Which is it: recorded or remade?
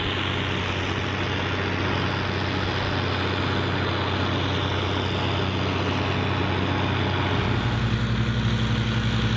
recorded